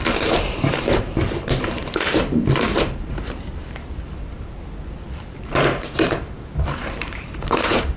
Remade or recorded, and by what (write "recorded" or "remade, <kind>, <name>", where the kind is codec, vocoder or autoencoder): remade, vocoder, BigVGAN v2